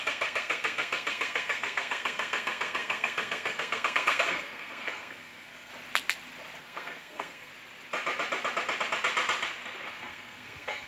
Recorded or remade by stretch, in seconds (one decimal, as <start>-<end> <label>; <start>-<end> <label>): 0.0-5.7 remade; 5.7-6.6 recorded; 6.6-7.5 remade; 7.5-9.9 recorded; 9.9-10.9 remade